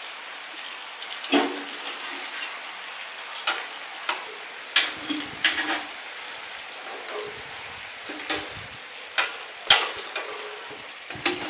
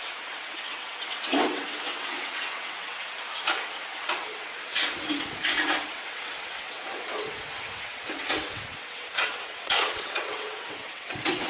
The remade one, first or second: second